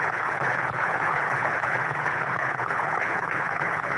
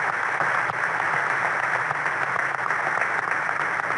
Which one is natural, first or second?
second